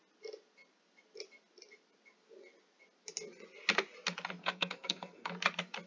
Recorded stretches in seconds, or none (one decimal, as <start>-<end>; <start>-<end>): 0.0-4.4; 5.3-5.9

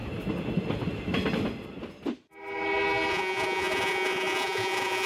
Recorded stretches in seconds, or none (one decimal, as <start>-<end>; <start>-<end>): 0.0-3.1

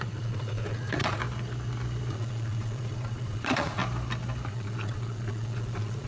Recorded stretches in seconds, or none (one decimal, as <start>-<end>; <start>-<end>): 1.2-2.1; 3.8-4.5

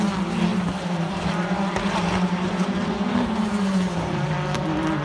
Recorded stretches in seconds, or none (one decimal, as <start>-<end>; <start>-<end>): 0.0-0.5; 3.5-5.0

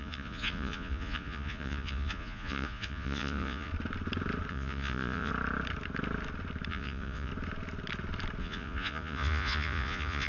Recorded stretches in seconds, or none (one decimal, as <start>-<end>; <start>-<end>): 3.7-4.5; 5.3-6.7; 7.3-8.4